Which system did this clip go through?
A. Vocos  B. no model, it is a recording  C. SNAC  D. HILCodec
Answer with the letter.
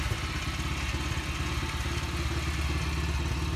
B